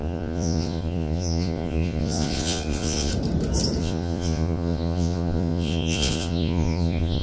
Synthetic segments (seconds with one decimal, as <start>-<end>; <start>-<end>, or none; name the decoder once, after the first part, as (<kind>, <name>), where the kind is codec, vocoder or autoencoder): 0.0-3.1 (vocoder, Vocos); 3.8-7.2